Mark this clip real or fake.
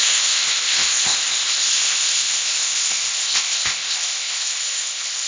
fake